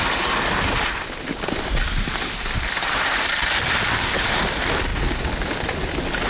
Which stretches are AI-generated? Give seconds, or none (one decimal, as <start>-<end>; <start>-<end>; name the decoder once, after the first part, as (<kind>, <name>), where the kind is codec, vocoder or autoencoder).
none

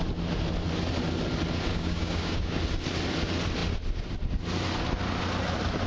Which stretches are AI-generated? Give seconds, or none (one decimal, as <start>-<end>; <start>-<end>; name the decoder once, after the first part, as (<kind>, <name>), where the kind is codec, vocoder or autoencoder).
1.7-2.6 (codec, DAC)

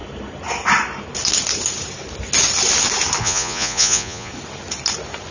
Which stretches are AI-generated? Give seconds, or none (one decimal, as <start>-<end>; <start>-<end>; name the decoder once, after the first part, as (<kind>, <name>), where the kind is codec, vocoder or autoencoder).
3.2-4.3 (vocoder, Vocos)